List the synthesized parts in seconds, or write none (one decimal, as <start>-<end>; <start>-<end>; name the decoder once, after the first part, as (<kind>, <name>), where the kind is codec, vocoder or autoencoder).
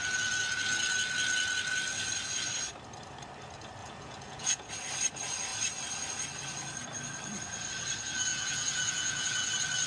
3.8-4.7 (vocoder, Vocos); 8.3-9.5